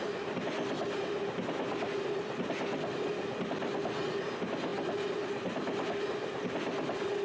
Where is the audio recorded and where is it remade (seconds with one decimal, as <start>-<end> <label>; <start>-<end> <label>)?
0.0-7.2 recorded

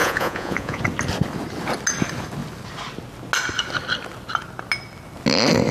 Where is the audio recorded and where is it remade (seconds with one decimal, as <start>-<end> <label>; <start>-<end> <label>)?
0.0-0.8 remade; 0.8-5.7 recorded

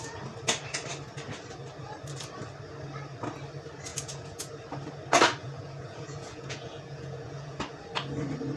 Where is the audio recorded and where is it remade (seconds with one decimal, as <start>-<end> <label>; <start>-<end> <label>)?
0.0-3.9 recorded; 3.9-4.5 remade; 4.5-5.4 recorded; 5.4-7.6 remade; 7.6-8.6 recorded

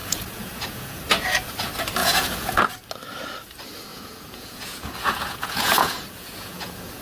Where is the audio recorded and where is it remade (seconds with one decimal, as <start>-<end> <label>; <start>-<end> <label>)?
0.0-1.0 remade; 1.0-2.0 recorded; 2.0-2.6 remade; 2.6-3.9 recorded; 3.9-7.0 remade

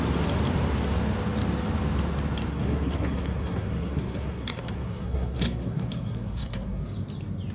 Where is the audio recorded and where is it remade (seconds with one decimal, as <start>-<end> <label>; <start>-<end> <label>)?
0.0-2.5 recorded; 2.5-6.8 remade; 6.8-7.5 recorded

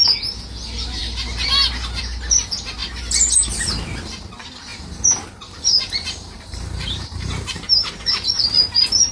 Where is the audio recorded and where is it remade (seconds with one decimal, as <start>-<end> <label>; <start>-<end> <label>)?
0.0-4.7 recorded; 4.7-8.1 remade; 8.1-9.1 recorded

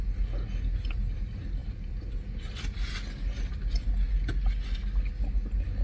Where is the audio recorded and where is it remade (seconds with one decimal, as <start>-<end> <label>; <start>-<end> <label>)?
0.0-5.8 recorded